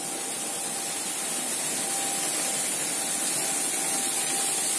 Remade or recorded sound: recorded